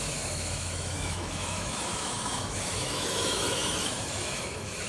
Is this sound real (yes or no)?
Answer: no